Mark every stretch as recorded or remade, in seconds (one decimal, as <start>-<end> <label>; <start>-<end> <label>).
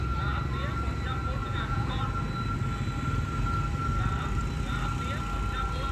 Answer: 0.0-1.4 recorded; 1.4-2.0 remade; 2.0-5.9 recorded